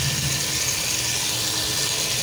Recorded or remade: recorded